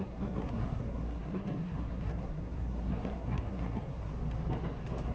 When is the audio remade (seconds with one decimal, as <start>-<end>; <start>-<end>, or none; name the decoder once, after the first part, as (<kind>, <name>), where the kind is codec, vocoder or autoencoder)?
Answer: 0.0-4.1 (codec, SNAC)